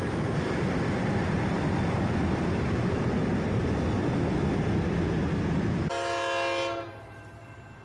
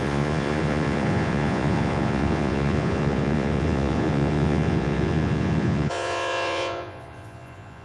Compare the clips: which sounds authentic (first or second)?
first